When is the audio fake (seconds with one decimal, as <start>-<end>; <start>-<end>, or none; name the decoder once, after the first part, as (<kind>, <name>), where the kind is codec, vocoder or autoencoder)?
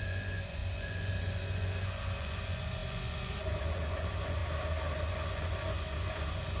0.0-4.4 (vocoder, Vocos); 4.9-6.6